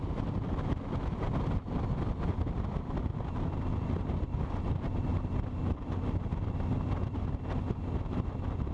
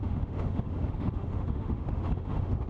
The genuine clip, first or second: first